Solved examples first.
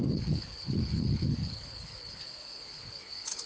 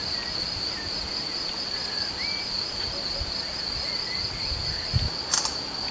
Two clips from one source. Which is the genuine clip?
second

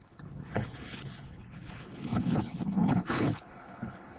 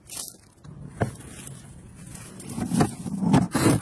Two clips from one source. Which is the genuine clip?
second